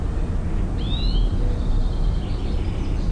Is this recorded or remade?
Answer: recorded